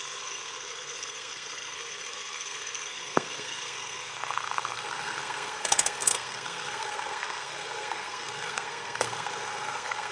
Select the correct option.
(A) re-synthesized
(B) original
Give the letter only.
A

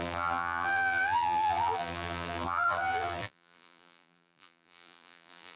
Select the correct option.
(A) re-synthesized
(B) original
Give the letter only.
A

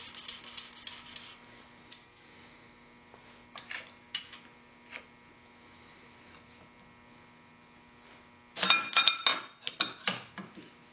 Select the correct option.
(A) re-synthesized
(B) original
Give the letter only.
B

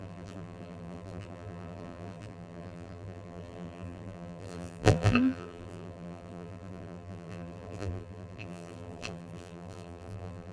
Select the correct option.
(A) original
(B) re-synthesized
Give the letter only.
B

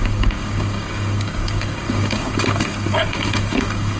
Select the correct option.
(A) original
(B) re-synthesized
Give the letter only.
B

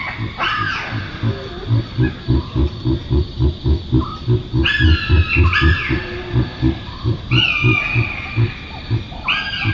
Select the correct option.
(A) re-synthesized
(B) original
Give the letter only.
B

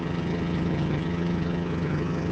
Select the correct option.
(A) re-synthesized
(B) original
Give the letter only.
A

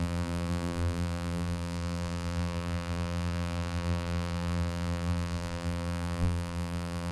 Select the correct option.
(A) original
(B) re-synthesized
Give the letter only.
B